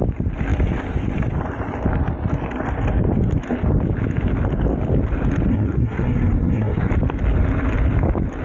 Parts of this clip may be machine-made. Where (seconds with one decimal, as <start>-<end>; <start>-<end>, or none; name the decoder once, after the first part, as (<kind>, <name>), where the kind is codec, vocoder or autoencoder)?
5.5-6.9 (codec, SNAC)